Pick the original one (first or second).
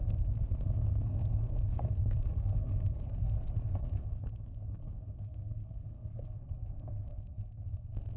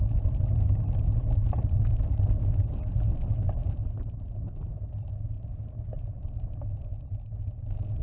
second